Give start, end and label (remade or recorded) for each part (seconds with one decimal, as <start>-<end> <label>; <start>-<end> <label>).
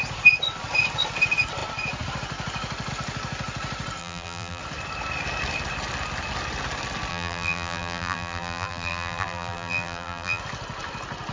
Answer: 0.0-4.0 recorded; 4.0-4.6 remade; 4.6-7.1 recorded; 7.1-10.4 remade; 10.4-11.3 recorded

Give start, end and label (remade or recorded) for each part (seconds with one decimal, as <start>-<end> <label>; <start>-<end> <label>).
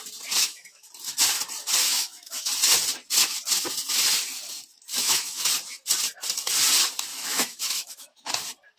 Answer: 0.0-0.4 recorded; 0.4-0.9 remade; 0.9-1.8 recorded; 1.8-2.5 remade; 2.5-5.0 recorded; 5.0-5.5 remade; 5.5-7.1 recorded; 7.1-8.3 remade; 8.3-8.8 recorded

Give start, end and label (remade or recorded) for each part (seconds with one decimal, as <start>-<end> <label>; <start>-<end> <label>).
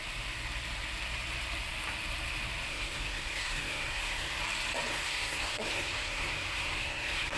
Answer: 0.0-2.7 recorded; 2.7-4.4 remade; 4.4-4.9 recorded; 4.9-7.4 remade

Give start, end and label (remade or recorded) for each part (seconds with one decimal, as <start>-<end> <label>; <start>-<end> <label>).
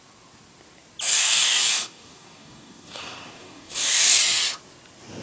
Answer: 0.0-1.1 recorded; 1.1-4.2 remade; 4.2-5.2 recorded